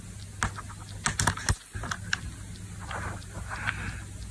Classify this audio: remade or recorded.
recorded